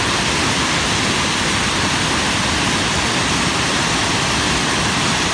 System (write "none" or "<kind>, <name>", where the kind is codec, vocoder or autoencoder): none